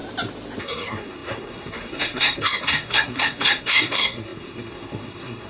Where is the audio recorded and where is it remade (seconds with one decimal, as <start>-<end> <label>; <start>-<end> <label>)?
0.0-0.6 recorded; 0.6-5.5 remade

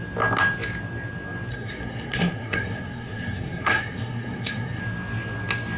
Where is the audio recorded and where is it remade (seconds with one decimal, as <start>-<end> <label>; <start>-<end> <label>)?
0.0-1.5 recorded; 1.5-4.8 remade; 4.8-5.8 recorded

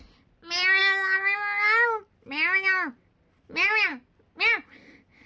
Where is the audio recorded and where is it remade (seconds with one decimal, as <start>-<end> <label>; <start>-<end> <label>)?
0.0-5.3 recorded

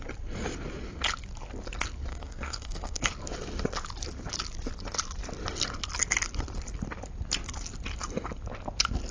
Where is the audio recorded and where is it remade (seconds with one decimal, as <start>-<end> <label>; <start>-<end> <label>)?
0.0-2.1 recorded; 2.1-3.1 remade; 3.1-9.1 recorded

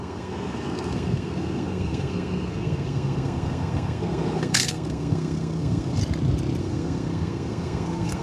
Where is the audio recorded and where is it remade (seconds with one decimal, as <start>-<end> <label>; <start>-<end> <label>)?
0.0-6.0 remade; 6.0-6.6 recorded; 6.6-8.2 remade

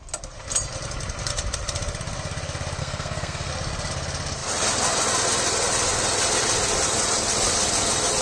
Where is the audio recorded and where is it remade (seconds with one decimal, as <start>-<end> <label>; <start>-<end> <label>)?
0.0-2.8 recorded; 2.8-3.5 remade; 3.5-8.2 recorded

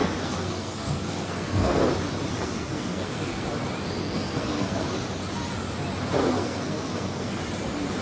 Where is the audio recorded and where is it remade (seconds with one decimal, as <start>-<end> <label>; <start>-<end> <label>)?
0.0-1.8 remade; 1.8-2.3 recorded; 2.3-3.5 remade; 3.5-4.0 recorded; 4.0-4.9 remade; 4.9-6.2 recorded; 6.2-7.4 remade; 7.4-8.0 recorded

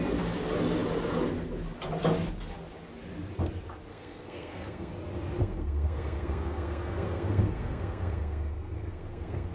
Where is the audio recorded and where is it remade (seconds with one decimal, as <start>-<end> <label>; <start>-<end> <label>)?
0.0-3.9 recorded; 3.9-4.9 remade; 4.9-5.4 recorded; 5.4-9.5 remade